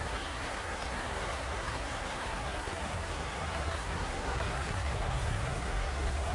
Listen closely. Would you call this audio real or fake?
fake